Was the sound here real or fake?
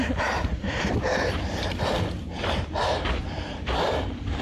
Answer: fake